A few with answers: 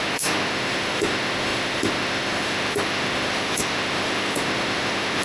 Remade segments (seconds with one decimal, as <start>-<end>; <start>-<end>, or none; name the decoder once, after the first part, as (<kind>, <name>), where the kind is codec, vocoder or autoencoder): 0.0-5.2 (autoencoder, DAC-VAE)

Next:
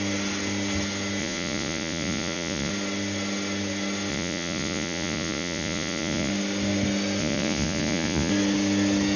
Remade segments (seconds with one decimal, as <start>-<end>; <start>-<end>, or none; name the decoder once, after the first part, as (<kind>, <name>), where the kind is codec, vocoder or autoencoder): 1.2-2.7 (vocoder, Vocos); 4.1-6.3; 7.2-8.3

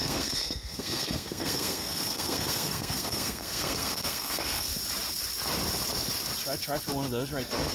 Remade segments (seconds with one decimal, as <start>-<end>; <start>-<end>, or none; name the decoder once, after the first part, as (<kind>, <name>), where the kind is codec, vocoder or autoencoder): 0.0-4.7 (codec, SNAC)